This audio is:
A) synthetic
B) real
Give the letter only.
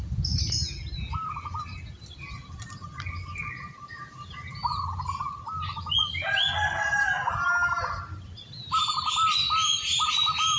B